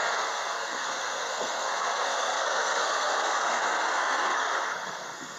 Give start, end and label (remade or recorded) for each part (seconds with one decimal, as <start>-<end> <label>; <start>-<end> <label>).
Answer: 0.0-5.4 remade